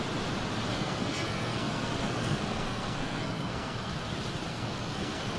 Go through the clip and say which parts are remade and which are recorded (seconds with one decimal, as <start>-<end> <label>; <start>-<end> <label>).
0.0-0.7 recorded; 0.7-3.9 remade; 3.9-4.5 recorded; 4.5-5.4 remade